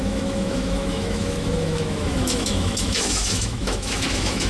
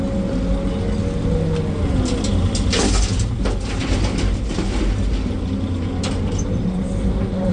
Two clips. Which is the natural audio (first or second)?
second